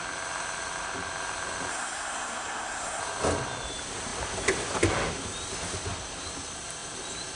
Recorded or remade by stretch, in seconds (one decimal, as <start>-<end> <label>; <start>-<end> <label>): 0.0-1.7 recorded; 1.7-3.0 remade; 3.0-7.4 recorded